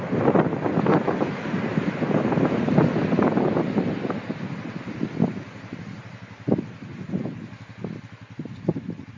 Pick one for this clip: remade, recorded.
recorded